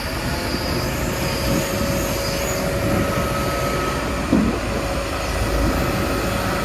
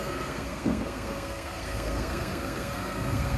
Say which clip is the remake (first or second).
second